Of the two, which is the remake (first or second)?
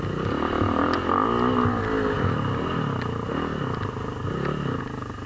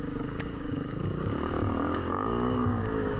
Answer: second